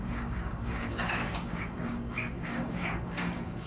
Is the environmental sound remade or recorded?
remade